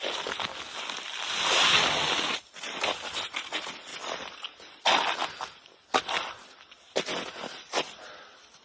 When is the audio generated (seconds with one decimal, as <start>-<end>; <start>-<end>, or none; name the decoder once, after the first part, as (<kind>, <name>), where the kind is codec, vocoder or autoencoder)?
none